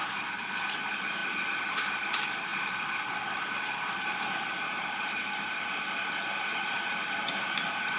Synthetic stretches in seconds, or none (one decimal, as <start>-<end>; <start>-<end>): 0.0-2.5; 3.8-5.2; 7.2-8.0